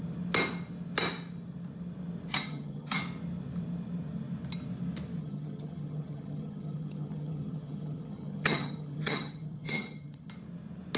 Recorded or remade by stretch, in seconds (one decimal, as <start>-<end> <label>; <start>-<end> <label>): 0.0-2.3 recorded; 2.3-3.0 remade; 3.0-5.2 recorded; 5.2-10.3 remade; 10.3-11.0 recorded